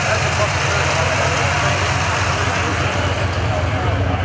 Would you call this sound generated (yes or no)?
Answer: no